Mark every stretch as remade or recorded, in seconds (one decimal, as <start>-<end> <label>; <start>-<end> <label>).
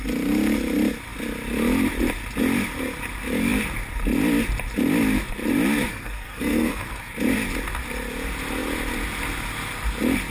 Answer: 0.0-5.9 recorded; 5.9-7.1 remade; 7.1-10.3 recorded